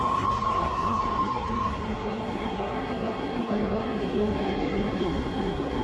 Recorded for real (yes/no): no